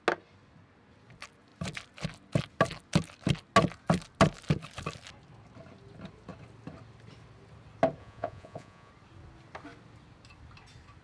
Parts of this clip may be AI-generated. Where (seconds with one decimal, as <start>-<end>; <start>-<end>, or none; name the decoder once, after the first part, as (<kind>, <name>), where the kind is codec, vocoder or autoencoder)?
8.0-8.9 (vocoder, Vocos)